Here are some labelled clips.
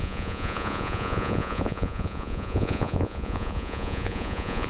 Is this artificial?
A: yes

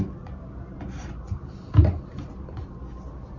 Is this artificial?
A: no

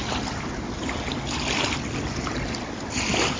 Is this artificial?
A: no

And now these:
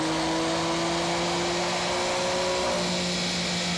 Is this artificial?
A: no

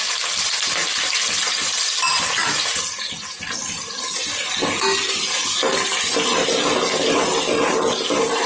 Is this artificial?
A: no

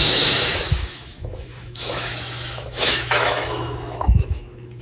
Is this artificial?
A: yes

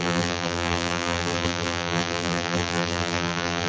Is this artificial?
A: yes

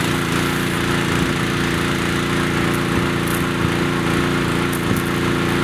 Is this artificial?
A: no